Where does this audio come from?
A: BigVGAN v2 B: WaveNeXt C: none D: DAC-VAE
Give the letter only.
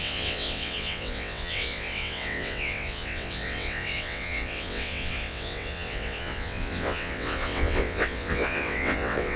B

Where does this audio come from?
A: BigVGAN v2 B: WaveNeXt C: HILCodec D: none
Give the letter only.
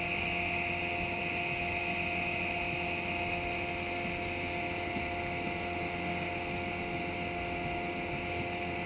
D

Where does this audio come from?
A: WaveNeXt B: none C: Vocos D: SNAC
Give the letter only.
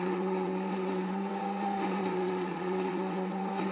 A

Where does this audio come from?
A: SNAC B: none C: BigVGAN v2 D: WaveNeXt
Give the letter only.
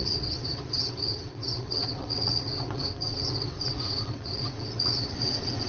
D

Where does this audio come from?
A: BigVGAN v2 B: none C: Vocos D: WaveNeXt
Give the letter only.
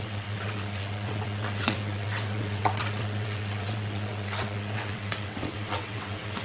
D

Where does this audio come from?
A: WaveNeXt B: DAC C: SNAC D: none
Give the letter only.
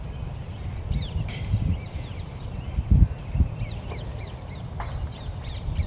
D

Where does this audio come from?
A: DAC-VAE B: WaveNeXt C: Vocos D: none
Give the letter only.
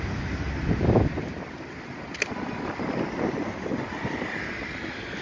D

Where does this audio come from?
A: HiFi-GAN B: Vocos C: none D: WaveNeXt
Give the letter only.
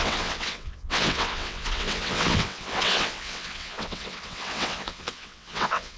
D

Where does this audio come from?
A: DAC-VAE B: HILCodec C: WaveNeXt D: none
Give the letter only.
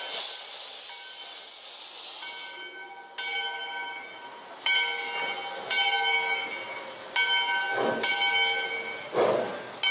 D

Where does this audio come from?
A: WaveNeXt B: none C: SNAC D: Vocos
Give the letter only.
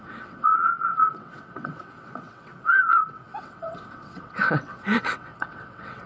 A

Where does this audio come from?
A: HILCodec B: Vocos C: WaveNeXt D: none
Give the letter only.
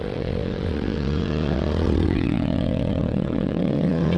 C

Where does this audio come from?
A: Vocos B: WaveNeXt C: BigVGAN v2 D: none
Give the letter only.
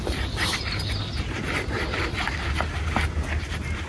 D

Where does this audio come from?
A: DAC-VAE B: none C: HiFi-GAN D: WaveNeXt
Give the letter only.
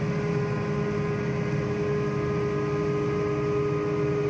B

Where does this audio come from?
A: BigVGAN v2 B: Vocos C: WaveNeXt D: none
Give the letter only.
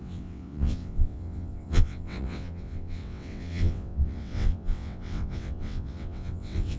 C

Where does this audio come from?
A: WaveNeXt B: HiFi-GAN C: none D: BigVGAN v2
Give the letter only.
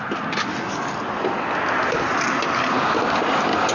C